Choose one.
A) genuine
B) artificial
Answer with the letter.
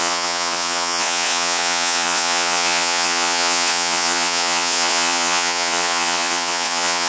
B